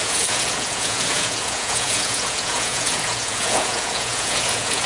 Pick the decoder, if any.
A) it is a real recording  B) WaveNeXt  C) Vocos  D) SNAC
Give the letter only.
C